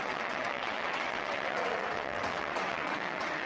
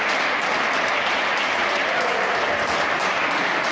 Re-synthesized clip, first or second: first